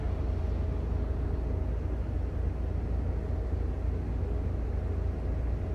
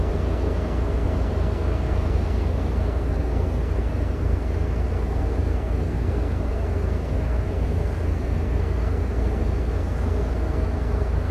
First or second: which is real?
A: first